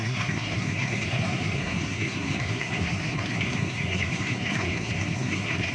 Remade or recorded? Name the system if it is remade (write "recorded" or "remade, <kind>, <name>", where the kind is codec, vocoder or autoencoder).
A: remade, codec, SNAC